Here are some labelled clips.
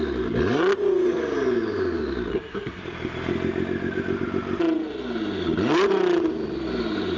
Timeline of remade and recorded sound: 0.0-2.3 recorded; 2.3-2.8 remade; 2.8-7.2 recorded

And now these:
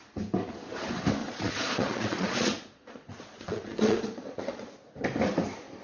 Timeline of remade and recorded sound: 0.0-1.2 recorded; 1.2-4.7 remade; 4.7-5.8 recorded

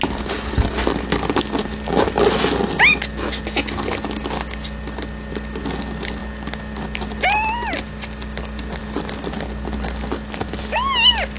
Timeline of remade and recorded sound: 0.0-11.4 recorded